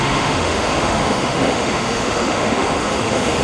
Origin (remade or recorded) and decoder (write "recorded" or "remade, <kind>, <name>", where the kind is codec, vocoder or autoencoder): remade, autoencoder, DAC-VAE